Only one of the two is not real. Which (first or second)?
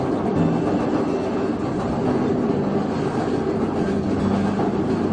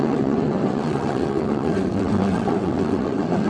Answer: second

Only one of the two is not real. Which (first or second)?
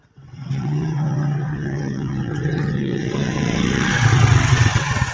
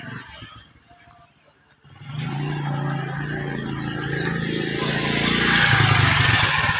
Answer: first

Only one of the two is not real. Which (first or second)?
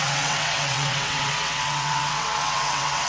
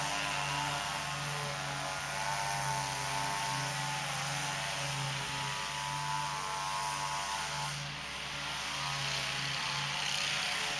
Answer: first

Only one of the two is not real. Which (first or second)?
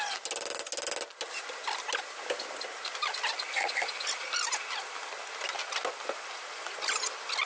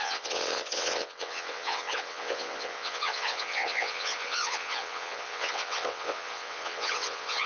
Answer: second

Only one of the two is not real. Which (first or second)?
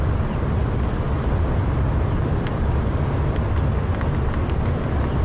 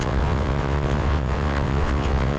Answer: second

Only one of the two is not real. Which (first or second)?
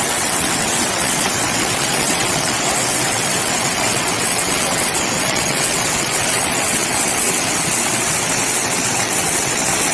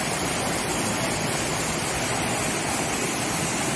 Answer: first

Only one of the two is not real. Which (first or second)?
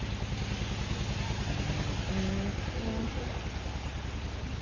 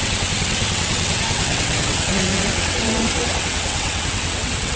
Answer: second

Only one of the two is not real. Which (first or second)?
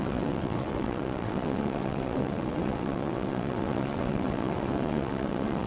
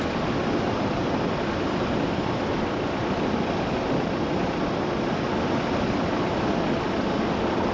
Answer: first